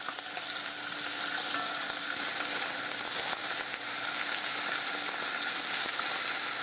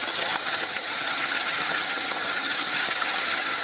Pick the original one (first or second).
first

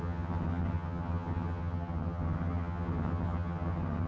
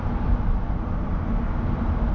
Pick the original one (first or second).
second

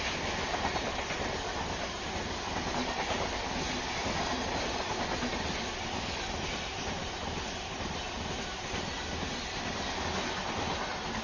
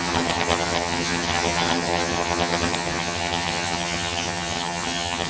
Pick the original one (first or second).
first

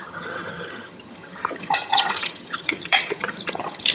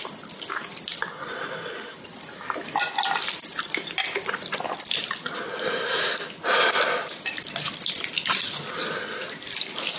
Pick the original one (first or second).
second